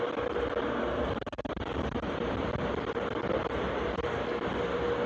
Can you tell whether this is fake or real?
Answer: real